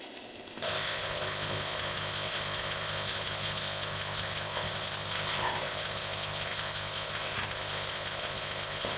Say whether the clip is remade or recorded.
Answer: remade